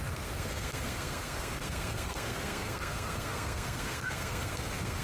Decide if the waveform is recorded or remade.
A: remade